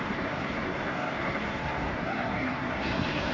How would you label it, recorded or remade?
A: remade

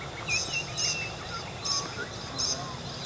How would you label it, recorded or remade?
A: recorded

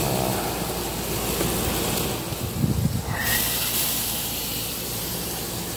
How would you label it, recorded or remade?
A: recorded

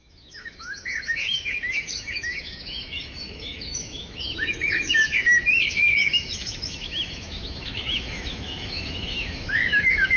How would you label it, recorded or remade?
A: remade